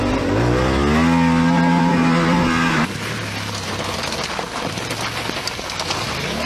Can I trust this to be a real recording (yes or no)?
yes